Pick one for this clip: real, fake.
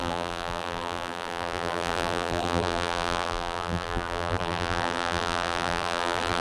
fake